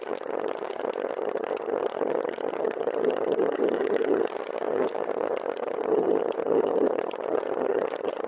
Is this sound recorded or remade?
remade